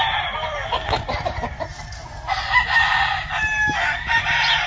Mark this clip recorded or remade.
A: recorded